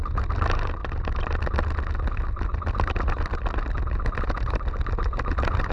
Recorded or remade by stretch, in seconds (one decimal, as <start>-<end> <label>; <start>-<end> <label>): 0.0-0.8 remade; 0.8-4.2 recorded; 4.2-5.7 remade